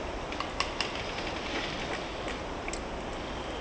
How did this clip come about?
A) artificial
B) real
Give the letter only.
B